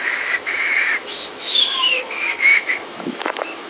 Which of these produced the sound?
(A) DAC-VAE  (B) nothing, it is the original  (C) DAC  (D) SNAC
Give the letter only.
A